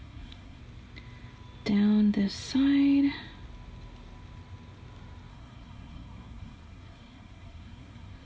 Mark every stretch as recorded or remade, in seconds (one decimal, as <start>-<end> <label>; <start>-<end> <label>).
0.0-0.6 remade; 0.6-5.3 recorded; 5.3-8.2 remade